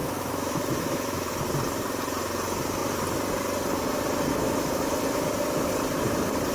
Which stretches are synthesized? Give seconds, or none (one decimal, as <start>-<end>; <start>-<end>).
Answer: 0.0-1.3; 4.3-4.9

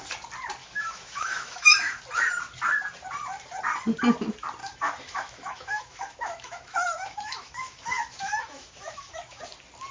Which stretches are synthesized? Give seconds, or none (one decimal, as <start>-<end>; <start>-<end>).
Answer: 0.6-2.0; 4.6-9.4

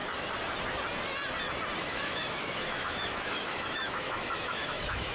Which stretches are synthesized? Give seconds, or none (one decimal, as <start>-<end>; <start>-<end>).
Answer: 1.8-5.1

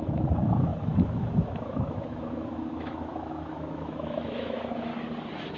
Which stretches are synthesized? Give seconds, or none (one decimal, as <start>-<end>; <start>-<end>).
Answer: 0.0-4.9

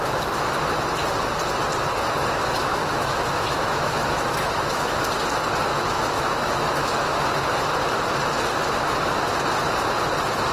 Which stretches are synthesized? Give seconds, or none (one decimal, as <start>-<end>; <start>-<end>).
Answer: 2.8-5.0; 5.7-7.3